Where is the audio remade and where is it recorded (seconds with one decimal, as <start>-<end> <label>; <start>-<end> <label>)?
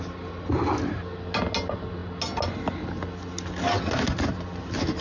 0.0-5.0 recorded